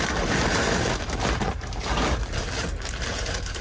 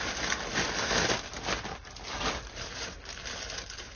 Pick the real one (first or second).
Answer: second